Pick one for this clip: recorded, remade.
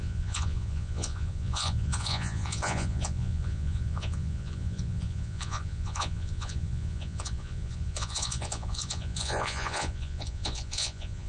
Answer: remade